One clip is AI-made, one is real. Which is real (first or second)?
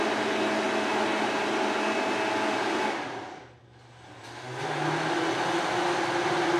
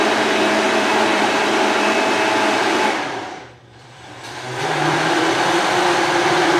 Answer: first